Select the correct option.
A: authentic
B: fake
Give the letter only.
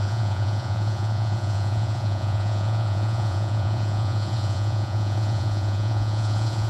B